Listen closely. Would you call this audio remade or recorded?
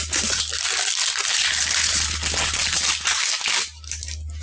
recorded